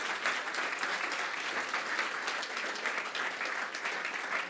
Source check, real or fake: real